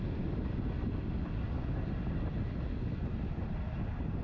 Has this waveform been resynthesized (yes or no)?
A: no